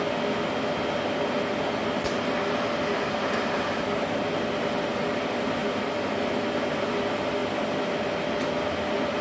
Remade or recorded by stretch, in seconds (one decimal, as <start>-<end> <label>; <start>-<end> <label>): 0.0-9.2 recorded